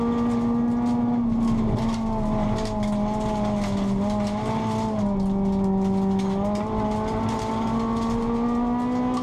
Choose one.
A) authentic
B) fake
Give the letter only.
A